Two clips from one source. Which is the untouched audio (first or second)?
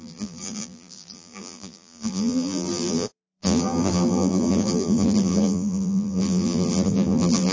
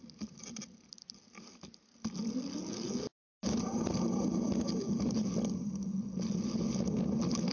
second